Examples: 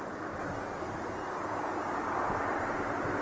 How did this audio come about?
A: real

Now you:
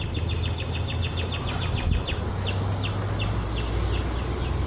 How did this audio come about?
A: real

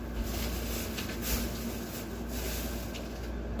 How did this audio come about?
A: real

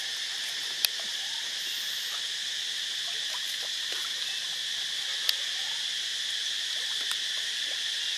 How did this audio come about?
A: real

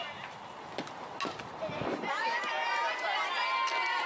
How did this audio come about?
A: real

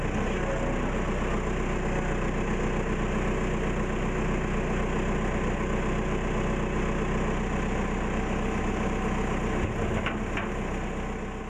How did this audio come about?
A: real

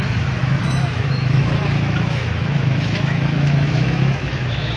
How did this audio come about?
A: fake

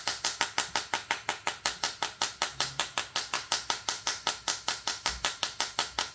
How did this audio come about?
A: real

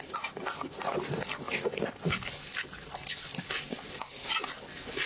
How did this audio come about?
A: real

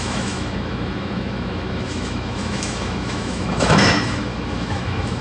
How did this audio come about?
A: fake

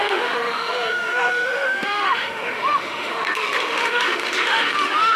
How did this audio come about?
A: fake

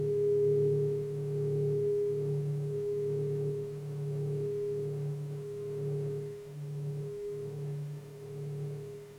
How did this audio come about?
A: fake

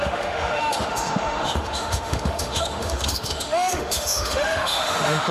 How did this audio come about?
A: fake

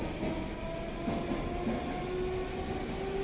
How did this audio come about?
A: real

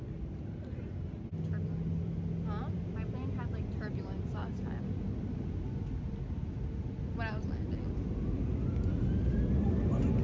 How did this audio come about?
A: real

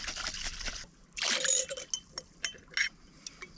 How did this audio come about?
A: real